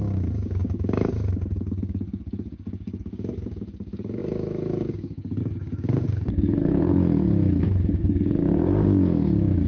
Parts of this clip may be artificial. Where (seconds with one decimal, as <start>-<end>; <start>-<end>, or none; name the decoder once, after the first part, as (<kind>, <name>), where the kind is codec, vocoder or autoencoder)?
0.0-9.7 (codec, DAC)